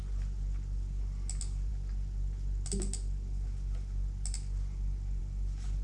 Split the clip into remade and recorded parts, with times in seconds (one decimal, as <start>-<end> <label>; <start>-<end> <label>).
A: 0.0-5.8 recorded